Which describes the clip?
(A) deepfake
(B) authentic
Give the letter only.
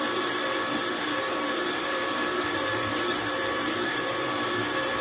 A